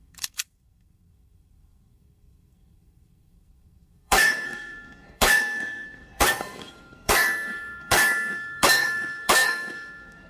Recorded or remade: remade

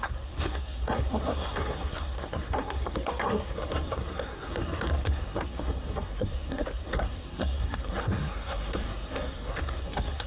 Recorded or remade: remade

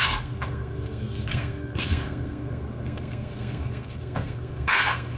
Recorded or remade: remade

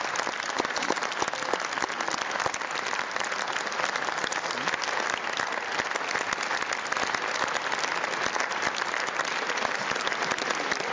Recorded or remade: recorded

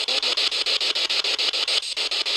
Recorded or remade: recorded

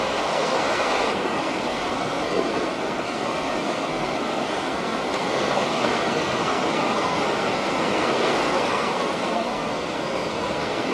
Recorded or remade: remade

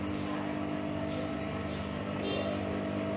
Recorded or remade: recorded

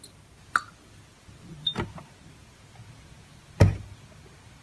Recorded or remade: recorded